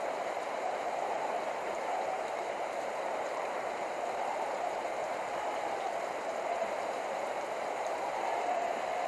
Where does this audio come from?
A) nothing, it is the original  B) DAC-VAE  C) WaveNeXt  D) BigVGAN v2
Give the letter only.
D